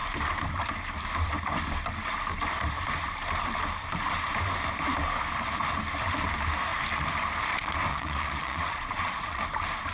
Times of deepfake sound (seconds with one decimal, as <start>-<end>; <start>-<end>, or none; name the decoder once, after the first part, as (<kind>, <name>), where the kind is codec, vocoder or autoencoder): 7.9-9.4 (vocoder, Vocos)